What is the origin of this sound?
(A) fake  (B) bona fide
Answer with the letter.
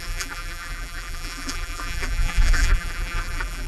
A